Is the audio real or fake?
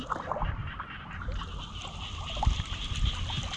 real